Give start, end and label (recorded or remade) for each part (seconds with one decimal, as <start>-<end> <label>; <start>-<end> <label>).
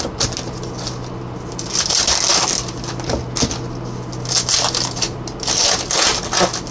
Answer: 0.0-6.7 recorded